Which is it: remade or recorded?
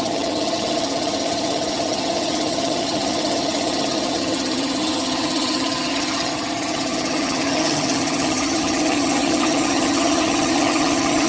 remade